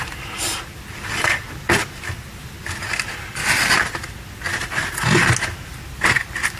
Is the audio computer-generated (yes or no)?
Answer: no